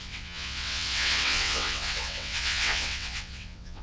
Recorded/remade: remade